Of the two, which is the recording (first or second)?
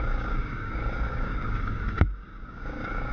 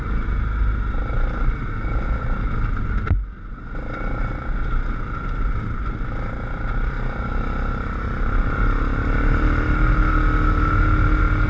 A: second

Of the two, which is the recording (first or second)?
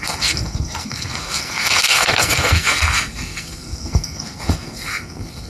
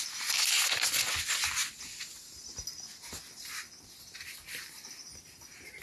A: second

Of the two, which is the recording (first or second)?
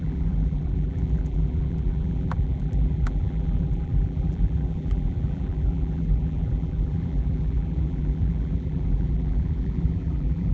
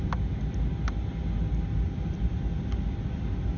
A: second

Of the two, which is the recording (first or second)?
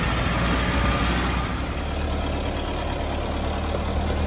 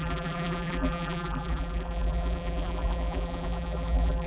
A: first